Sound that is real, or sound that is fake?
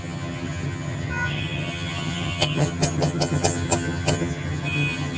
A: fake